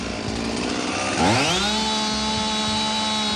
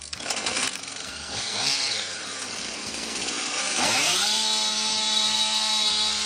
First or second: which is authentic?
first